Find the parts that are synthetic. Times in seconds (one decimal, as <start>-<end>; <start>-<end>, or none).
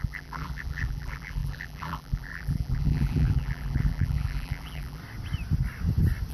0.0-5.0